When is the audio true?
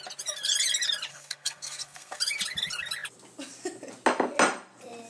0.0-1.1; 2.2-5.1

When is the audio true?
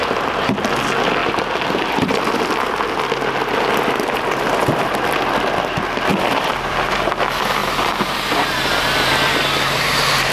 0.0-1.2; 2.4-6.1; 7.1-7.6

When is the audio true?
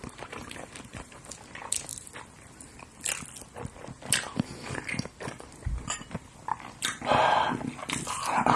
none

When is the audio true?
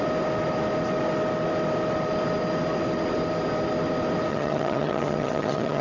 0.0-4.3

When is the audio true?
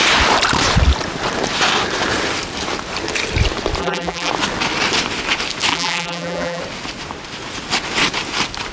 0.0-3.8; 4.3-5.7; 6.6-8.7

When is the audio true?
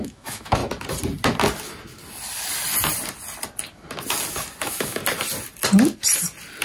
0.6-4.6; 5.0-6.6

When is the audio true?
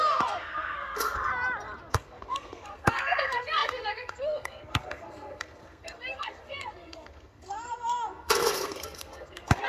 1.3-1.9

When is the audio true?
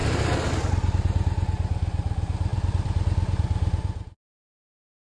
0.7-2.5; 4.6-5.2